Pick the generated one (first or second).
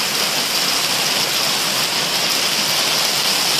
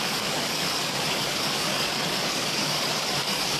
second